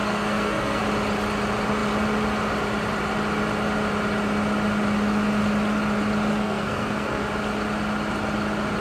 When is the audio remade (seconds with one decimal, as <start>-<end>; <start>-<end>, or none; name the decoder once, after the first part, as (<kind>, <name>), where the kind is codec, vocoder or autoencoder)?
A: 0.0-0.8 (codec, SNAC); 6.3-7.2